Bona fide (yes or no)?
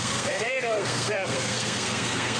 no